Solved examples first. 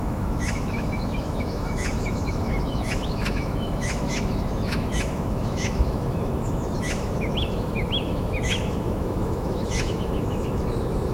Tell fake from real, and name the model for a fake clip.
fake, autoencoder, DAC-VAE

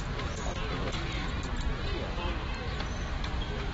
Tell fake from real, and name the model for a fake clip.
real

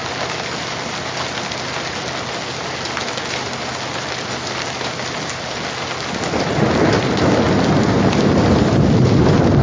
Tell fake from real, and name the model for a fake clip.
real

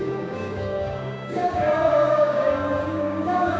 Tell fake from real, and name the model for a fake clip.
fake, codec, DAC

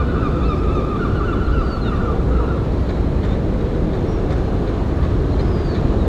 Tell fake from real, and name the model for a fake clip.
real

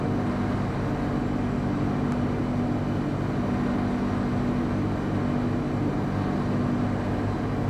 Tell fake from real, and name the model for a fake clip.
real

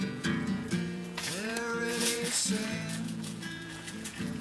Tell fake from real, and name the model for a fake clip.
fake, vocoder, Vocos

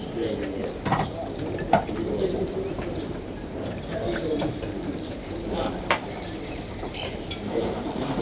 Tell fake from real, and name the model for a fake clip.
fake, vocoder, BigVGAN v2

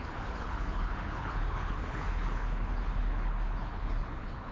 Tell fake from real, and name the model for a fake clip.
fake, codec, HILCodec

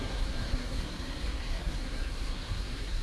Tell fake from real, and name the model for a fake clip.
fake, codec, SNAC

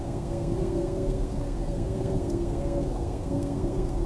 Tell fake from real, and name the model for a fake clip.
fake, codec, SNAC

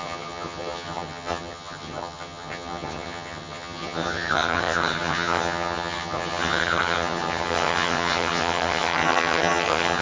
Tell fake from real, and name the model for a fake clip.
fake, vocoder, HiFi-GAN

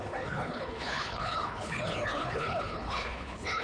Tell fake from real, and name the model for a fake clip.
fake, codec, HILCodec